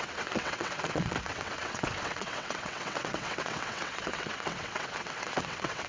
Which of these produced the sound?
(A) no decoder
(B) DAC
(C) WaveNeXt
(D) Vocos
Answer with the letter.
C